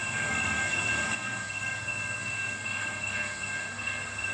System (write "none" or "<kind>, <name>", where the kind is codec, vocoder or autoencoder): codec, SNAC